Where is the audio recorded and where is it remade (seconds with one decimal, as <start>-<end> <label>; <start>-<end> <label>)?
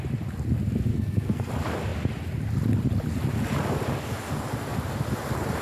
0.0-0.9 recorded; 0.9-1.5 remade; 1.5-5.6 recorded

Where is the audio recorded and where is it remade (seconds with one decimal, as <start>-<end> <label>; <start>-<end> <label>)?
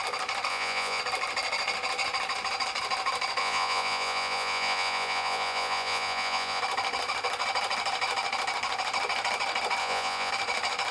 0.0-0.5 recorded; 0.5-1.0 remade; 1.0-3.4 recorded; 3.4-6.6 remade; 6.6-9.8 recorded; 9.8-10.3 remade; 10.3-10.9 recorded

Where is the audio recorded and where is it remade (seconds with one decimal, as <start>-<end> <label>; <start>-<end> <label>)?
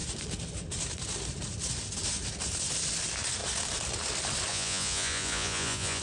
0.0-4.5 recorded; 4.5-6.0 remade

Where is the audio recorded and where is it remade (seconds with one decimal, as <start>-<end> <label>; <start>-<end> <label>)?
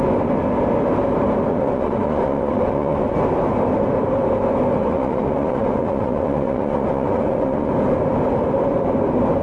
0.0-1.5 recorded; 1.5-3.0 remade; 3.0-4.8 recorded; 4.8-7.7 remade; 7.7-9.4 recorded